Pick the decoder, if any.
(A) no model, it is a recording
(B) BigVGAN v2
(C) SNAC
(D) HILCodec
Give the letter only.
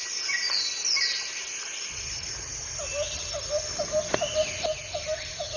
A